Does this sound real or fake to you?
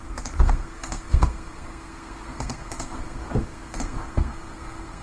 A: fake